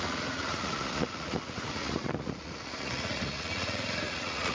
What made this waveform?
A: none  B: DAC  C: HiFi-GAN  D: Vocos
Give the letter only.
D